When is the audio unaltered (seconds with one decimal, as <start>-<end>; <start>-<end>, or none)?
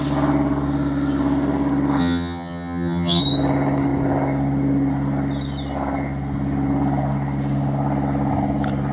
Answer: 0.0-2.0; 3.2-8.9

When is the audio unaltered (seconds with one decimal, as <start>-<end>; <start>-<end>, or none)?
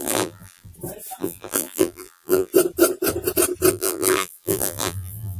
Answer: 0.7-1.2; 2.5-3.7